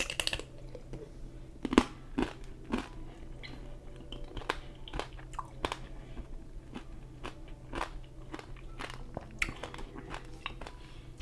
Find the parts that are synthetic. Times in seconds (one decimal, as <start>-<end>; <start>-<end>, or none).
none